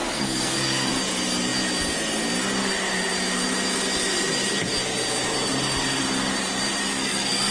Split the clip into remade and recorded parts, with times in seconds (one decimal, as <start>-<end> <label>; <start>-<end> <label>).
0.0-0.9 remade; 0.9-6.8 recorded; 6.8-7.5 remade